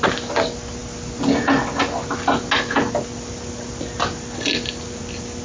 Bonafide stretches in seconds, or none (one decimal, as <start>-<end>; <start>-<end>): 0.0-5.4